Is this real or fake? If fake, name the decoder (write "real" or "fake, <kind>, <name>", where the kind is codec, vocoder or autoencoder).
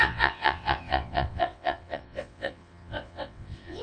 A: fake, vocoder, WaveNeXt